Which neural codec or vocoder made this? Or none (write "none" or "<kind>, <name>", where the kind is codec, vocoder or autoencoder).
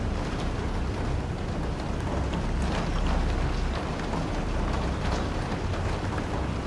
none